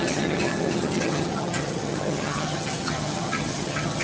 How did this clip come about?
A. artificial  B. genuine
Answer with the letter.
A